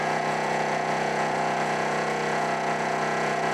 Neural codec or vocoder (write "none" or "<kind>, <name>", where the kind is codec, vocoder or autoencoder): vocoder, Vocos